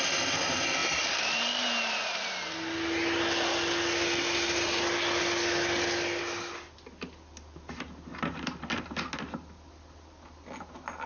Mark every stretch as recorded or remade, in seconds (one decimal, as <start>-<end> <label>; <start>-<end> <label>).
0.0-11.1 recorded